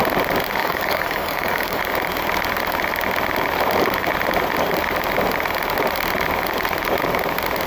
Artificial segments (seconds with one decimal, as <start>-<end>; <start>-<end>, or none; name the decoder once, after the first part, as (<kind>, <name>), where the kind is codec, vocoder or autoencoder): 0.6-1.8 (codec, DAC)